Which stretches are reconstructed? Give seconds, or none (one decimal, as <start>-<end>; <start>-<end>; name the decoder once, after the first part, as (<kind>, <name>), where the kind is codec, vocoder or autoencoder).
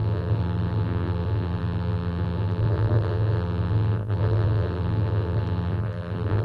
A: 0.0-6.4 (vocoder, BigVGAN v2)